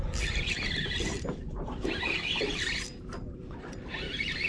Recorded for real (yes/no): no